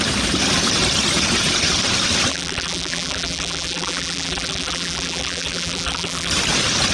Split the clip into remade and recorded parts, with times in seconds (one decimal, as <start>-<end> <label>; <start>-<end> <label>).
0.0-2.3 recorded; 2.3-6.3 remade; 6.3-6.9 recorded